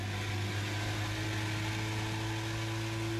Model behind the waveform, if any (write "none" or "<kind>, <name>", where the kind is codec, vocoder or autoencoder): none